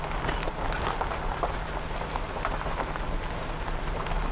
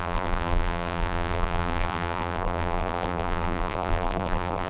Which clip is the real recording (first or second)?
first